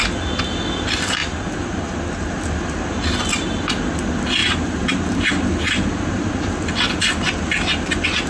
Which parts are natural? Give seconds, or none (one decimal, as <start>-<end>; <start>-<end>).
0.0-4.4; 5.3-8.3